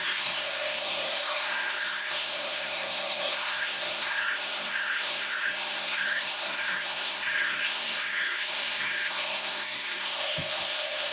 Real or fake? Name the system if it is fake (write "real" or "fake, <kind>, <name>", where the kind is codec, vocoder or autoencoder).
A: fake, codec, SNAC